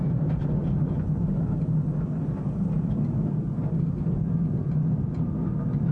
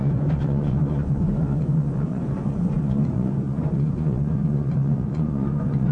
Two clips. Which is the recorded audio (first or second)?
first